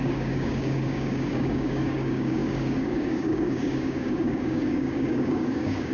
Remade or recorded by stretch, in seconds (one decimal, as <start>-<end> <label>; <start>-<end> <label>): 0.0-5.9 remade